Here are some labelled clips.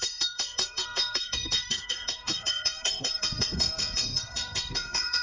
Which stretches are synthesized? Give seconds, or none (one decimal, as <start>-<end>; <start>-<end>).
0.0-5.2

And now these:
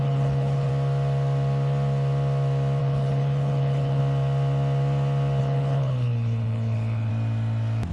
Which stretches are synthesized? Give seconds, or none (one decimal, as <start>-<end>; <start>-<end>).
0.0-0.7; 2.8-4.0; 5.4-7.1

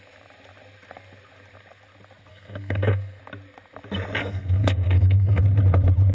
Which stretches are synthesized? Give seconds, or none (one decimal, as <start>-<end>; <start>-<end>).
2.3-3.2; 4.2-5.4